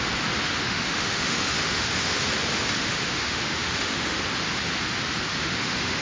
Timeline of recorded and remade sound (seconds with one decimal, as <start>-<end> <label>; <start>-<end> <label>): 0.0-0.6 recorded; 0.6-2.3 remade; 2.3-2.8 recorded; 2.8-4.2 remade; 4.2-5.3 recorded; 5.3-6.0 remade

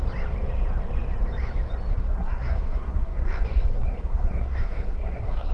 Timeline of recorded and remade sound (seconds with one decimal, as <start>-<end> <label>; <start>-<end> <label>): 0.0-1.9 recorded; 1.9-5.5 remade

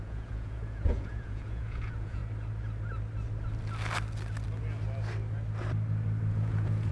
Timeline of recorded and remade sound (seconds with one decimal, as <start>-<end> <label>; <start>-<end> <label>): 0.0-2.2 remade; 2.2-6.3 recorded; 6.3-6.9 remade